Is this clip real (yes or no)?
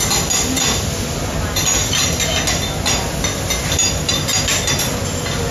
yes